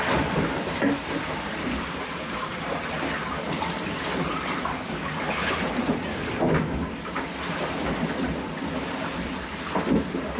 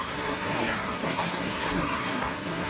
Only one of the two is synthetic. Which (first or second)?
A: second